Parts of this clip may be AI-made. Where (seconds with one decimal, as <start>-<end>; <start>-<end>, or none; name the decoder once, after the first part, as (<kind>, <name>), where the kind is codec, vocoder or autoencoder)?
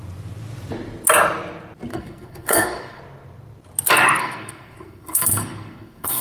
1.9-3.0 (codec, SNAC); 4.2-6.2